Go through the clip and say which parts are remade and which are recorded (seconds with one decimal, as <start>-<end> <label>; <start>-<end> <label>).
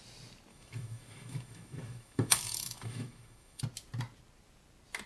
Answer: 0.0-0.5 recorded; 0.5-3.6 remade; 3.6-5.1 recorded